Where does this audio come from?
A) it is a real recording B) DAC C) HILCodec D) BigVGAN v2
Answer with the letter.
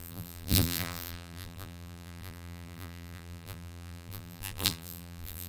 D